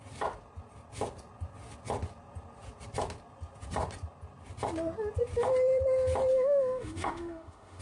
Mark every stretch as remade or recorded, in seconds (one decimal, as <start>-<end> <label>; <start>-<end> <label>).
0.0-6.3 recorded; 6.3-7.8 remade